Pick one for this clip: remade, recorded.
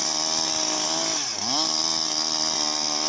recorded